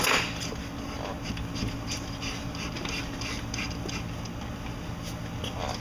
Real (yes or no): yes